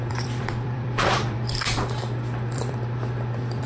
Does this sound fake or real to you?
fake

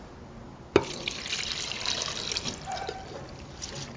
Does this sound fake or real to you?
fake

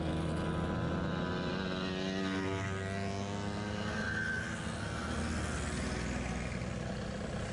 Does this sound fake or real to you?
real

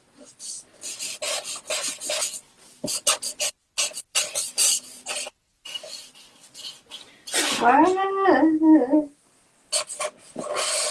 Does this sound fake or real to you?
real